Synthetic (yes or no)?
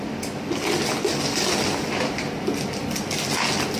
no